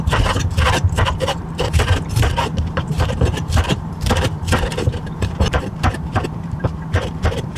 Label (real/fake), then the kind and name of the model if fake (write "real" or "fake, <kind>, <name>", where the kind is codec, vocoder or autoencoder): fake, vocoder, BigVGAN v2